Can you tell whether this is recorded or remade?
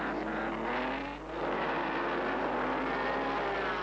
recorded